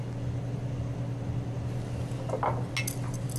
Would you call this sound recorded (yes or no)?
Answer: yes